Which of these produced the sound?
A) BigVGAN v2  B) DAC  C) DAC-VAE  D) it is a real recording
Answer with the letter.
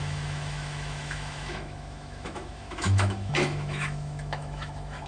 C